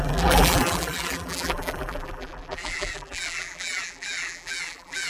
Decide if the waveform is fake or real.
fake